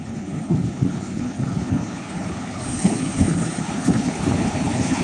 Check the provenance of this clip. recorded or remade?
remade